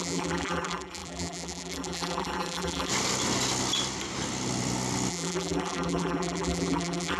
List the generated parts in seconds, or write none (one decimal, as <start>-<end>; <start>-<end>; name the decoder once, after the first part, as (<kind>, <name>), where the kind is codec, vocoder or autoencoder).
0.0-2.9 (vocoder, BigVGAN v2); 5.1-7.2